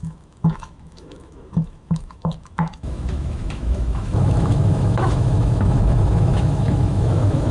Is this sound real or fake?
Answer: fake